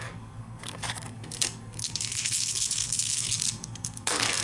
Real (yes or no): no